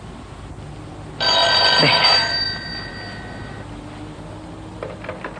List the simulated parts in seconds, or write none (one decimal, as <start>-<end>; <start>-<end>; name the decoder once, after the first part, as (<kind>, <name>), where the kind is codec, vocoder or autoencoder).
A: 1.4-2.9 (vocoder, BigVGAN v2)